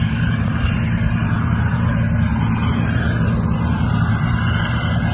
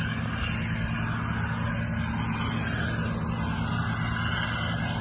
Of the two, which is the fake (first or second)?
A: first